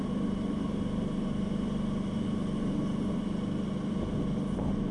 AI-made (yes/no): no